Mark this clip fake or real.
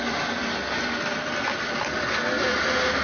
real